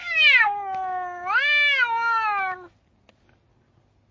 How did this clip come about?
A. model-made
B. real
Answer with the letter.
B